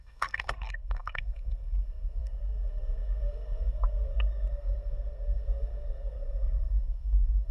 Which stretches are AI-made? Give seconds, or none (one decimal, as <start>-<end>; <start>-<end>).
0.0-7.5